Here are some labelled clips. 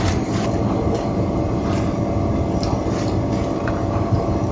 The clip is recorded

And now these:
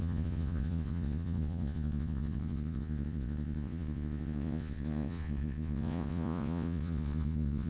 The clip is remade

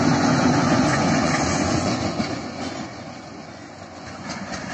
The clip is remade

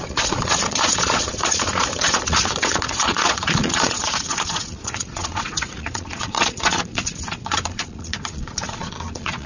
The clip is remade